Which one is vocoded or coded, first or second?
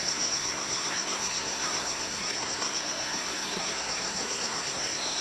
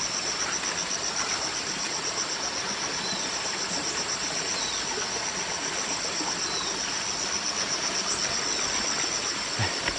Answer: first